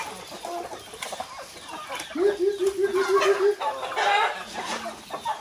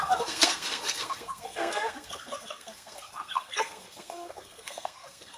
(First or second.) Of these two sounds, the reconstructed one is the second